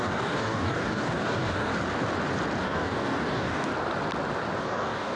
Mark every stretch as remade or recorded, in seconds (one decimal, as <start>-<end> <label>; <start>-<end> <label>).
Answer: 0.0-1.7 remade; 1.7-2.6 recorded; 2.6-3.7 remade; 3.7-4.6 recorded; 4.6-5.2 remade